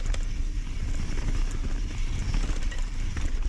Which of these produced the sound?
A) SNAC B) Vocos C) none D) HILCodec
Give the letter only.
C